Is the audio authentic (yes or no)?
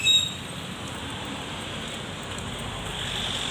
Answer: yes